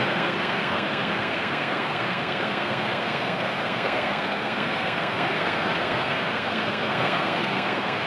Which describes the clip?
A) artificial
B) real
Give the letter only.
A